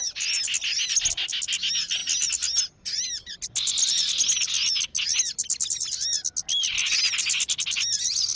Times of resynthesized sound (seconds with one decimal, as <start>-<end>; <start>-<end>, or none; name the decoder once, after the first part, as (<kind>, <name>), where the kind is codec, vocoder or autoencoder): none